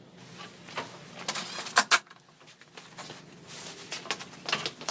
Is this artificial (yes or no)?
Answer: no